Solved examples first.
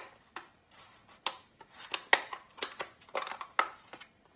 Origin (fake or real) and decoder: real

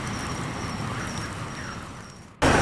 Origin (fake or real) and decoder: real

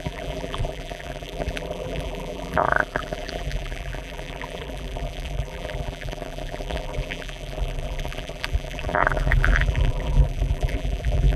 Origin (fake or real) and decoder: fake, vocoder, BigVGAN v2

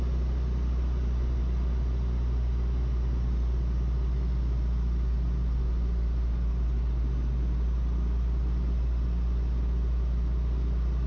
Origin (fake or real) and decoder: real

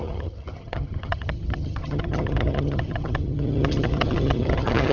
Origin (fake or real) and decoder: fake, vocoder, HiFi-GAN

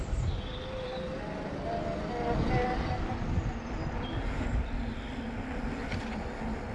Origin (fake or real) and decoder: real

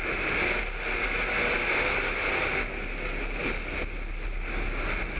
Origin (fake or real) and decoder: real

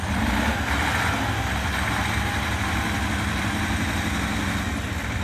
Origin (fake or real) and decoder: real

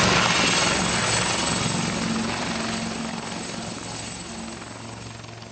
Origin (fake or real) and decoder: real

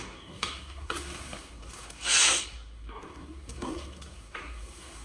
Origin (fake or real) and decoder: fake, codec, SNAC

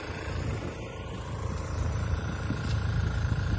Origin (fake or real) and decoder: fake, vocoder, BigVGAN v2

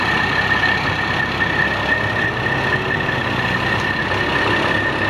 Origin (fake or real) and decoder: real